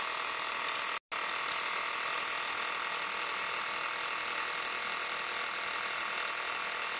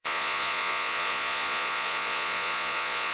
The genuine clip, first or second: first